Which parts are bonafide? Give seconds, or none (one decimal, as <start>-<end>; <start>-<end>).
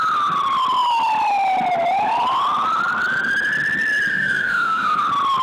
0.0-4.1; 5.0-5.4